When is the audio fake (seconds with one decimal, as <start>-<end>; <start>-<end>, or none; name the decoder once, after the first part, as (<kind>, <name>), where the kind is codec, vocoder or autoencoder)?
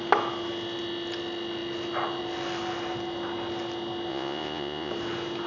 4.1-4.9 (vocoder, Vocos)